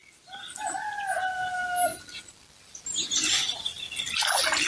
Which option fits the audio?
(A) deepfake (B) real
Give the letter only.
B